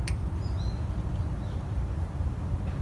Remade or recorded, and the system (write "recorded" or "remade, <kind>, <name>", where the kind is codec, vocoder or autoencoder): recorded